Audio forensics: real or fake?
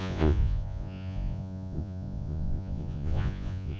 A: fake